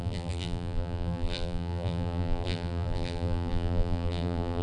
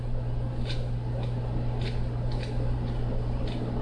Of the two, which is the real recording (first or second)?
second